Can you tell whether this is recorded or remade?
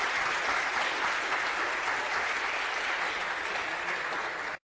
recorded